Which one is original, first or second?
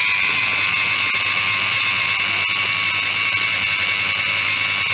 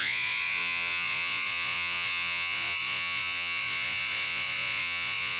first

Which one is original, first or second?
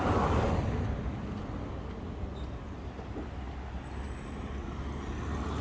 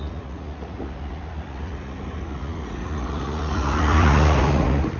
first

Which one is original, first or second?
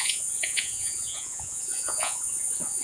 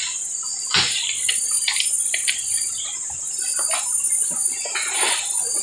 second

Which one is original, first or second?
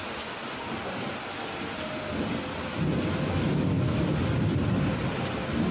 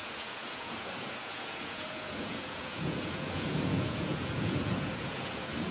first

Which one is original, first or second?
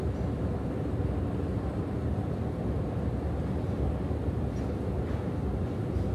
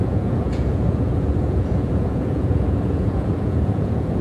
first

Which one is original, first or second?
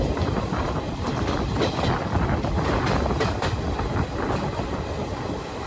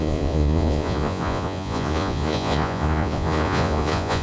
first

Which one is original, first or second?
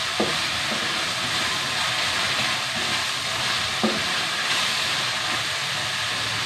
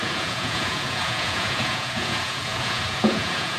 first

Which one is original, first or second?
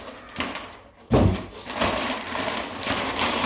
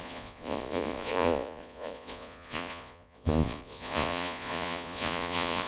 first